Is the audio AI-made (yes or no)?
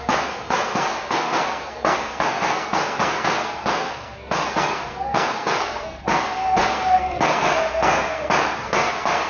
yes